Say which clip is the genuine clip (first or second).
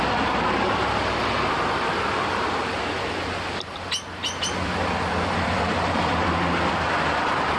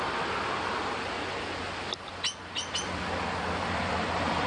second